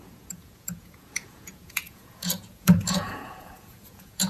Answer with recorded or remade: remade